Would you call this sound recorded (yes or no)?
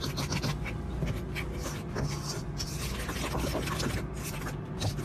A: yes